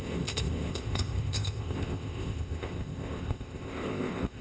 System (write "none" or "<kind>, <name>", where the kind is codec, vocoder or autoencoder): codec, ZipCodec